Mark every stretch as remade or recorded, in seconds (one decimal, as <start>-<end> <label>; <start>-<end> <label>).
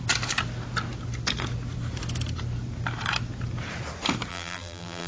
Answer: 0.0-4.3 recorded; 4.3-5.1 remade